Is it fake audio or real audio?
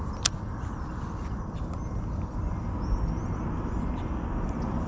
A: real